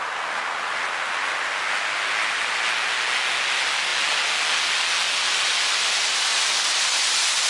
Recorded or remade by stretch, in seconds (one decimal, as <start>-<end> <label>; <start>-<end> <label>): 0.0-7.5 recorded